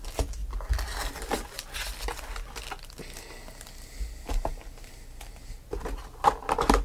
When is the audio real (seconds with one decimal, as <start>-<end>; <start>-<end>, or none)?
0.0-6.8